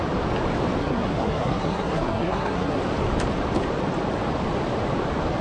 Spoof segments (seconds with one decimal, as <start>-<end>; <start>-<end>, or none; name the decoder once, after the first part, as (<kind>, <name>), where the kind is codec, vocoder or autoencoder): 0.8-2.8 (codec, SNAC)

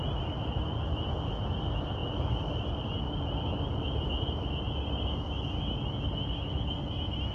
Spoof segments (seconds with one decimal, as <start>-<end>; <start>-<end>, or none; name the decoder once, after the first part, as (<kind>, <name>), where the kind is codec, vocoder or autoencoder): none